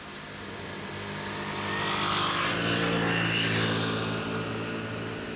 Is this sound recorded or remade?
recorded